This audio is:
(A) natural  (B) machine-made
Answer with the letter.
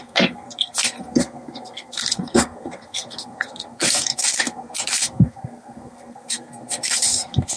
B